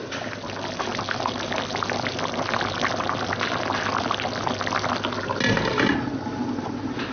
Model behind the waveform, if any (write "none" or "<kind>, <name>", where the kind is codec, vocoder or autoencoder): none